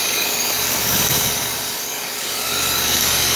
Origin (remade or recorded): remade